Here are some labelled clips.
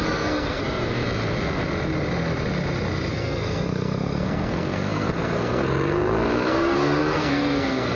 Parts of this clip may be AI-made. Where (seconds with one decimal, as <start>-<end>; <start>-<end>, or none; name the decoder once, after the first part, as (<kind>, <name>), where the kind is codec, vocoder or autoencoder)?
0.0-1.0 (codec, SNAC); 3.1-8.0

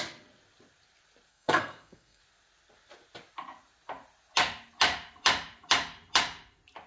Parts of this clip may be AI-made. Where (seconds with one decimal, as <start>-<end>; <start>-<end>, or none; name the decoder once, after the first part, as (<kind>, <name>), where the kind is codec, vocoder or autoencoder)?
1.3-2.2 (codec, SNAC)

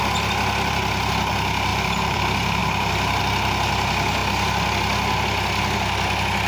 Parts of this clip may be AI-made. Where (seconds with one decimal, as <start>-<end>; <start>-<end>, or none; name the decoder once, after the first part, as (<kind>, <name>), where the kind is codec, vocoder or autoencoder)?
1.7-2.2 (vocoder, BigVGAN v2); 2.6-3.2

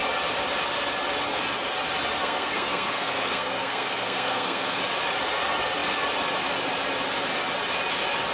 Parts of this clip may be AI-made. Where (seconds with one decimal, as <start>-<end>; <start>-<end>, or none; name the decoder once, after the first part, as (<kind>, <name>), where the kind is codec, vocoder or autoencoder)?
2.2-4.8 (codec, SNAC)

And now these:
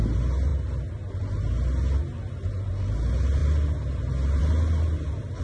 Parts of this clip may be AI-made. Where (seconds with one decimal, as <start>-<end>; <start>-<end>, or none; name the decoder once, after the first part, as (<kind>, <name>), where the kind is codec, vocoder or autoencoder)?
none

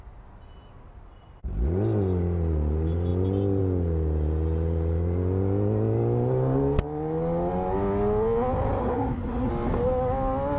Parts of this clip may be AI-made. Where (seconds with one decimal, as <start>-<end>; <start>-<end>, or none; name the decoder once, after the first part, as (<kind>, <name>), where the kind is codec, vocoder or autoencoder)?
8.8-9.5 (codec, SNAC)

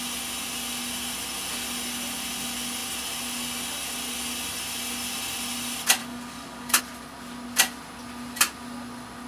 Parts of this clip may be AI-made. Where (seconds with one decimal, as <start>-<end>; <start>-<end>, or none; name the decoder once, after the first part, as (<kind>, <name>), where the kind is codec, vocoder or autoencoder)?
6.0-6.8 (codec, DAC)

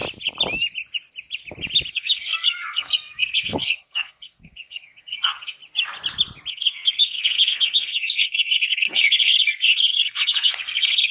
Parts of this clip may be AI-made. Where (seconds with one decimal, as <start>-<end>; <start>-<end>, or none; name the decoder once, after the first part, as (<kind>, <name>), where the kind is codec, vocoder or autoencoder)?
1.9-5.6 (codec, SNAC); 6.5-11.1